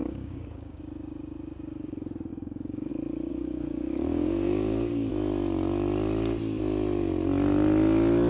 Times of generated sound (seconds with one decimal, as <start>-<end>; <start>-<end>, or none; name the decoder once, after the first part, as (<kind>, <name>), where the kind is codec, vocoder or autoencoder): 0.0-0.8 (codec, DAC); 2.3-2.9; 3.3-5.1